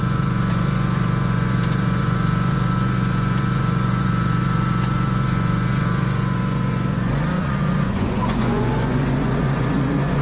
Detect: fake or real fake